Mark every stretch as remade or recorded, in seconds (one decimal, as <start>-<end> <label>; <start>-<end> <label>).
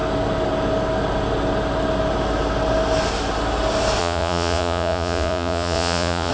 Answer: 0.0-4.0 recorded; 4.0-6.3 remade